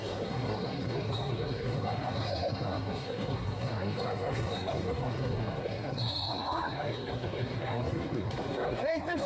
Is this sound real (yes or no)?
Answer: no